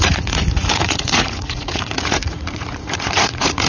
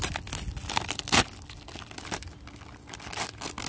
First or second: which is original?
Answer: second